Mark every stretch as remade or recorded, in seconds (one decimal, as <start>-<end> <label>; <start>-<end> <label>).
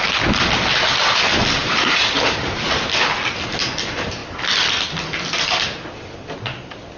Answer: 0.0-1.6 recorded; 1.6-2.8 remade; 2.8-7.0 recorded